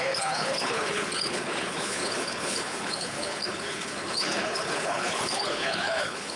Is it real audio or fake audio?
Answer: fake